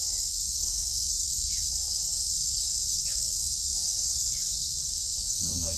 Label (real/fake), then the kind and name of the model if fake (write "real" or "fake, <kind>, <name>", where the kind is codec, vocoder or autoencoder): fake, codec, SNAC